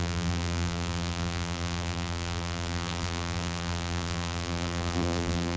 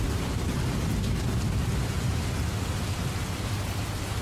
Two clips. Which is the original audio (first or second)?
second